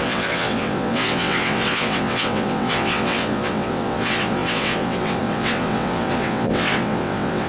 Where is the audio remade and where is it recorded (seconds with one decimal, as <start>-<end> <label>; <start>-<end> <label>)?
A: 0.0-7.5 remade